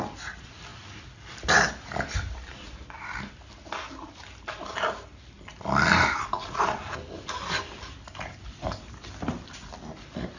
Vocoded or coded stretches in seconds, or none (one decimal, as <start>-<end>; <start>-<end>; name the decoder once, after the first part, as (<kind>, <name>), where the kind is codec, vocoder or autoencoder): none